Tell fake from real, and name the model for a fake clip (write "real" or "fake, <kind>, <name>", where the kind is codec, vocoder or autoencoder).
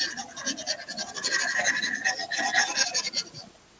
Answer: real